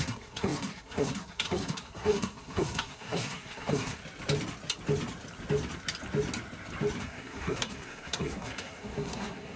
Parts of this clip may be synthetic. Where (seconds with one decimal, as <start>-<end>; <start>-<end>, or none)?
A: 0.0-4.0; 7.0-9.6